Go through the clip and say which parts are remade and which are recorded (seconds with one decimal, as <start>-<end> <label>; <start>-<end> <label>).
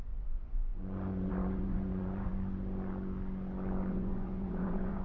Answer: 0.0-2.3 remade; 2.3-3.9 recorded; 3.9-5.0 remade